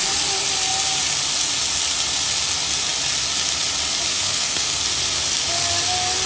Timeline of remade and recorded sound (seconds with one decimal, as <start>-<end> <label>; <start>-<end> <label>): 0.0-4.1 recorded; 4.1-4.8 remade; 4.8-6.3 recorded